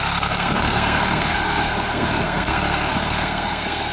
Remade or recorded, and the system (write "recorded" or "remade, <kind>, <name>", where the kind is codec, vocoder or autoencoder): remade, codec, SNAC